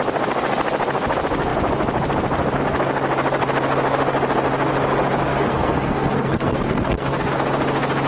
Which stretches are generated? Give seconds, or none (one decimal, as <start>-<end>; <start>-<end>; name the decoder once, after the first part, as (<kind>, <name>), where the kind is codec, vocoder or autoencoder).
5.3-7.3 (codec, SNAC)